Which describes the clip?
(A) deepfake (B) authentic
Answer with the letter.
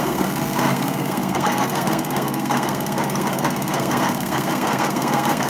A